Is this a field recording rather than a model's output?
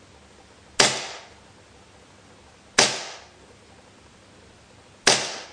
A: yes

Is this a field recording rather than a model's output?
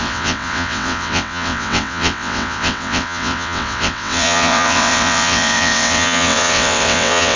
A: no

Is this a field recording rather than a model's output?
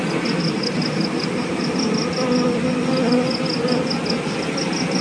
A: yes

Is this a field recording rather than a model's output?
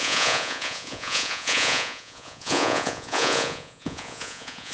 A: no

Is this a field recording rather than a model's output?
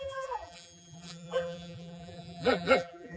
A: no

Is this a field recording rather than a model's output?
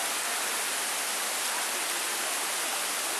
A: yes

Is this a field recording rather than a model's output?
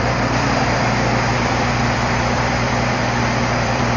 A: no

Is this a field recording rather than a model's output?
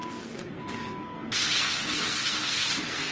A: no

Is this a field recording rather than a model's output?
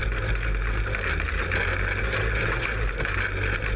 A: yes